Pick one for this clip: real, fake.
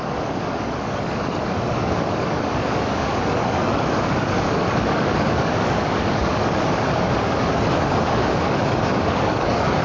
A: fake